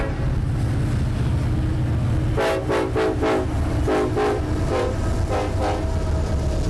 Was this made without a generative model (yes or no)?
yes